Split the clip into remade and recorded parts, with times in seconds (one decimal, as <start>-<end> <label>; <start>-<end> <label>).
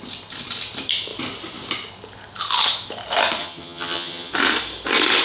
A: 0.0-3.4 recorded; 3.4-4.3 remade; 4.3-5.2 recorded